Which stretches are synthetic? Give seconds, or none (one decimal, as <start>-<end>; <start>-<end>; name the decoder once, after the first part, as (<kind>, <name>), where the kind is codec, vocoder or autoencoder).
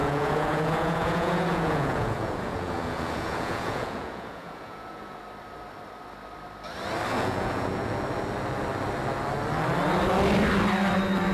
0.0-5.2 (vocoder, Vocos); 7.1-7.9